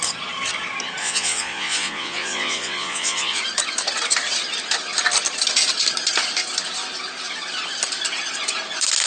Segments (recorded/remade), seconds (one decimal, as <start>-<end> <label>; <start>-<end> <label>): 0.0-1.0 recorded; 1.0-3.4 remade; 3.4-9.1 recorded